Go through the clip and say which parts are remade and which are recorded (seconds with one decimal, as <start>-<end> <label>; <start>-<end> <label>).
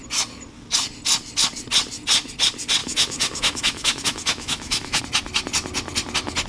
0.0-2.8 recorded; 2.8-5.0 remade; 5.0-6.5 recorded